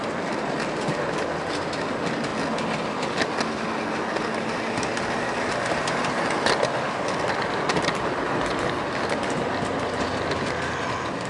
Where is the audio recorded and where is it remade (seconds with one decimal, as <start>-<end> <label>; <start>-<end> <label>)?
0.0-11.3 recorded